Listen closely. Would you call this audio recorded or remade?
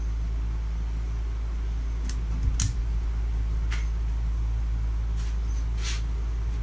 recorded